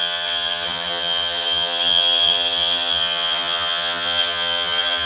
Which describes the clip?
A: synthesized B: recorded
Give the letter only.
A